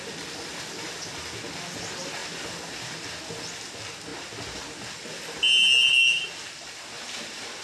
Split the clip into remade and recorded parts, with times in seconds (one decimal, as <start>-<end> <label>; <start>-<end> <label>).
0.0-7.6 recorded